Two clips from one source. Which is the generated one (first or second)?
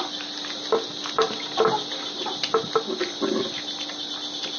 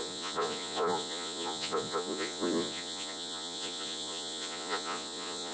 second